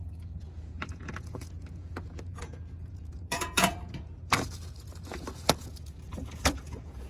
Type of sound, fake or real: fake